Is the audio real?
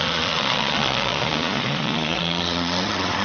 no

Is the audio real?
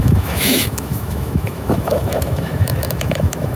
no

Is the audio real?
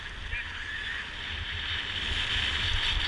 yes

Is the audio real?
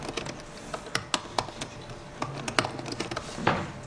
yes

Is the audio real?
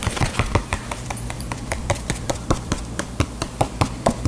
no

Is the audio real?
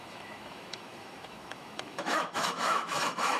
no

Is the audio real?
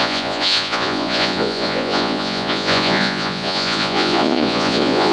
no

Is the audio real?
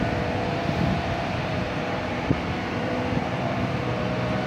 no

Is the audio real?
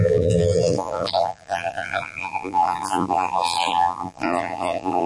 no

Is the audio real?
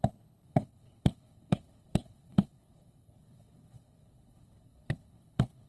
no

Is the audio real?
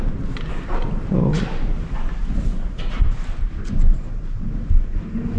yes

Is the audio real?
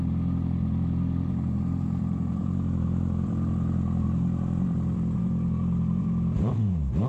no